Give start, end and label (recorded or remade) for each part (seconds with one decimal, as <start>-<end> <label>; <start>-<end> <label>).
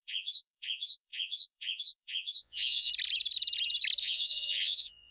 0.0-2.9 remade; 2.9-4.0 recorded; 4.0-5.1 remade